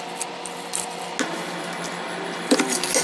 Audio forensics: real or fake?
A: real